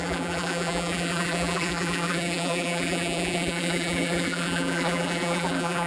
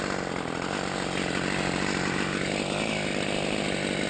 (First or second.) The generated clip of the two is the first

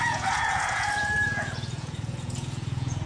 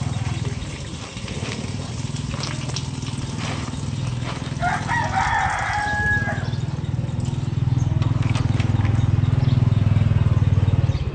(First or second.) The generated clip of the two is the first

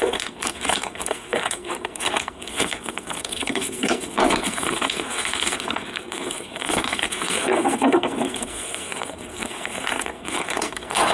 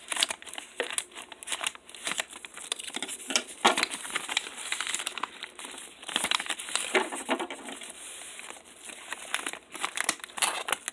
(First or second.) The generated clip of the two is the first